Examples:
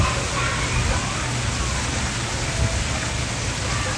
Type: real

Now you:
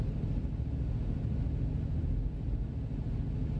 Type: real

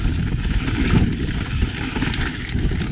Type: real